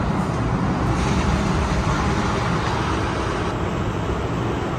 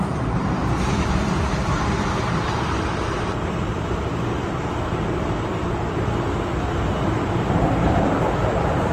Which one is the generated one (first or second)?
second